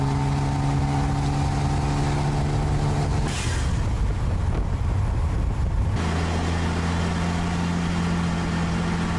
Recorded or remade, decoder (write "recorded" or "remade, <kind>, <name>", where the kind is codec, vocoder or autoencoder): recorded